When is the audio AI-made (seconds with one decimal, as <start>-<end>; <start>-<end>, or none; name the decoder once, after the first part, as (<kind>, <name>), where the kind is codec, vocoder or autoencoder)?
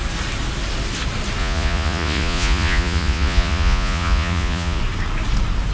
1.4-4.8 (vocoder, Vocos)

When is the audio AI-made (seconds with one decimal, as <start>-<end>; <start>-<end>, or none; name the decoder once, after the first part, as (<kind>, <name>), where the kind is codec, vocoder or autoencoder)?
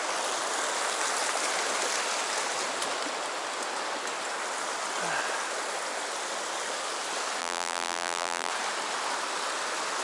7.4-8.5 (vocoder, BigVGAN v2)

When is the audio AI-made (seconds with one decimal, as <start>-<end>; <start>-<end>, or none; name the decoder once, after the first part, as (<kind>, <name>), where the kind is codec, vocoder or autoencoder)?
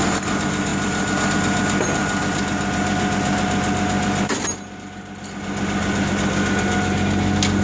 none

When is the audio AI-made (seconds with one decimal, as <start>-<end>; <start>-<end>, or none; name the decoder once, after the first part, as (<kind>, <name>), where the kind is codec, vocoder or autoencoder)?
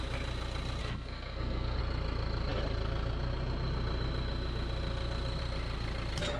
0.8-1.8 (codec, SNAC)